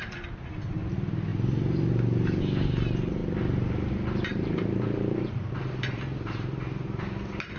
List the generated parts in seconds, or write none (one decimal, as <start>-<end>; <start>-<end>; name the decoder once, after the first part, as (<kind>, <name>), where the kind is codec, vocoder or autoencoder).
4.3-7.0 (vocoder, BigVGAN v2)